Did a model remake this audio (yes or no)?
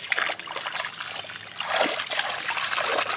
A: no